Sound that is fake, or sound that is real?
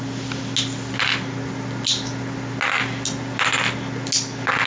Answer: real